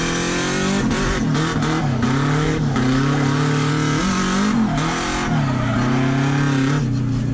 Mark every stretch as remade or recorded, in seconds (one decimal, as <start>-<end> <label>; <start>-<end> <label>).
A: 0.0-1.8 recorded; 1.8-3.7 remade; 3.7-7.3 recorded